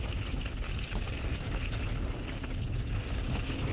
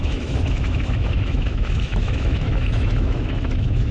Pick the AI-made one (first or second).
second